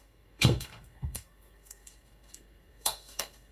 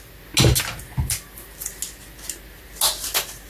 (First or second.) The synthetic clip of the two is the first